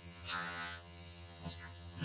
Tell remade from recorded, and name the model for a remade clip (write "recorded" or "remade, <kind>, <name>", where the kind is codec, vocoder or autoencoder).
remade, vocoder, HiFi-GAN